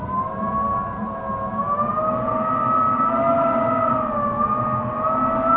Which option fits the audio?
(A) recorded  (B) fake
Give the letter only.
A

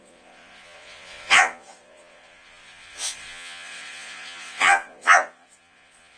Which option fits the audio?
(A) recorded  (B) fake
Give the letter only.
B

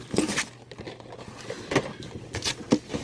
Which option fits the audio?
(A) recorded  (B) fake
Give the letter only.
A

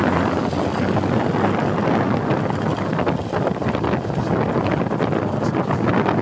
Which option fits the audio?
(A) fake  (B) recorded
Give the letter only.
B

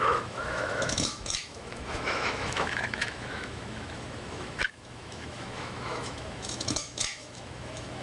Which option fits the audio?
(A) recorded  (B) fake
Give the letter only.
B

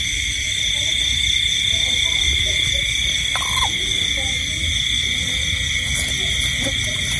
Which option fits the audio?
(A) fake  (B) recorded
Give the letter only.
B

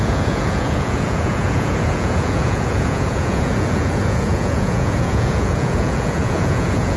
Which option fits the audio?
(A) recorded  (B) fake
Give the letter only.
B